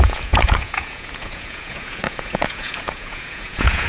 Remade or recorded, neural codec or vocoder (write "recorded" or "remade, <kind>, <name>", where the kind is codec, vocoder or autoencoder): remade, vocoder, Vocos